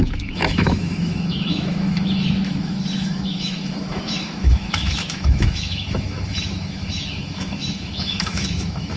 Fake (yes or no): yes